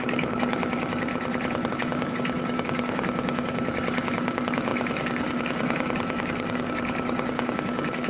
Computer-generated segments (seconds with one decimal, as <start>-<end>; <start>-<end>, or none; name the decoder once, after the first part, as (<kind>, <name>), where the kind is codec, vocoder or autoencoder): 0.0-1.1 (codec, DAC); 1.7-8.1